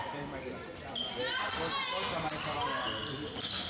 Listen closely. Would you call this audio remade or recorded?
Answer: recorded